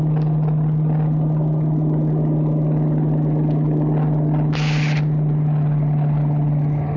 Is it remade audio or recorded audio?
recorded